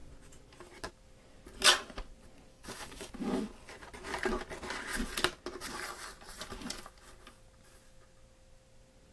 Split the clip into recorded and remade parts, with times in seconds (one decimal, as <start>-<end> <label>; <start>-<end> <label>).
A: 0.0-2.5 recorded; 2.5-3.1 remade; 3.1-9.1 recorded